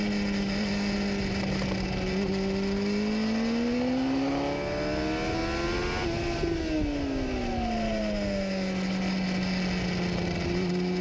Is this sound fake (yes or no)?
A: no